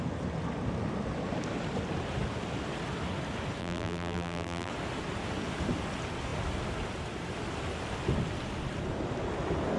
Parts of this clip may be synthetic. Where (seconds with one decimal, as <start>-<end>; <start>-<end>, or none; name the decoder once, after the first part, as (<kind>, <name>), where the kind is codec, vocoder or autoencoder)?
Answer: 3.6-4.7 (vocoder, BigVGAN v2)

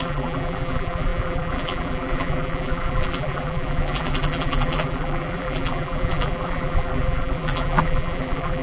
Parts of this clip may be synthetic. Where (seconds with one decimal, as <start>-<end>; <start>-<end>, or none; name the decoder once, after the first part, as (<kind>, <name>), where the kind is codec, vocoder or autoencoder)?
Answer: 0.0-8.6 (vocoder, BigVGAN v2)

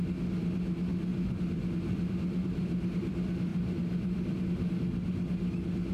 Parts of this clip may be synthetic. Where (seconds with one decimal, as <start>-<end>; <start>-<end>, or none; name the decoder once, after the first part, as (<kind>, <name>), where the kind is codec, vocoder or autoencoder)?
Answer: 1.1-3.1 (vocoder, BigVGAN v2); 3.5-4.4

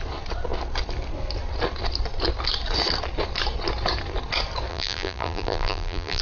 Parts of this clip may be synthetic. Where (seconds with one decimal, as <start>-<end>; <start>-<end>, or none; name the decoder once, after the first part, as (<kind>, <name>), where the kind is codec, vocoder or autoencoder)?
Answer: 4.7-6.2 (vocoder, BigVGAN v2)